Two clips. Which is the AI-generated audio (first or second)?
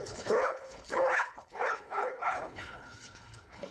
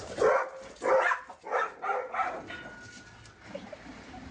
first